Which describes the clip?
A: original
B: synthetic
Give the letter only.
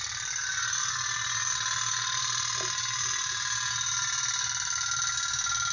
A